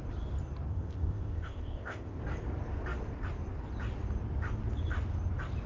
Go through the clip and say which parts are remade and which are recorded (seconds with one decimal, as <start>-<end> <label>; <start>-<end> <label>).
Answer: 0.0-0.7 recorded; 0.7-2.2 remade; 2.2-5.7 recorded